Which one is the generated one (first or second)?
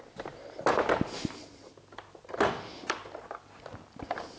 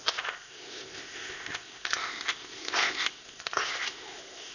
second